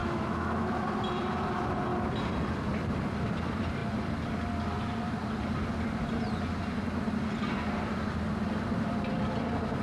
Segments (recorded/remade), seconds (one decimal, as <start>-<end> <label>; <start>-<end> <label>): 0.0-0.8 remade; 0.8-9.8 recorded